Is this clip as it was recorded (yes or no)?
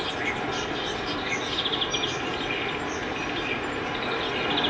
yes